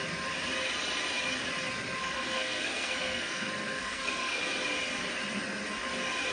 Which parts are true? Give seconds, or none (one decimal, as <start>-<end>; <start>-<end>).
0.0-2.0; 4.4-6.3